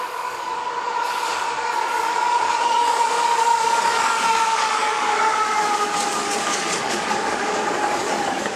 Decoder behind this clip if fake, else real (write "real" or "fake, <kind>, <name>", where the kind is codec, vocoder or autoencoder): fake, codec, DAC